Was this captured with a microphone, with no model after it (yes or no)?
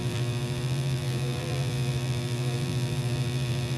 no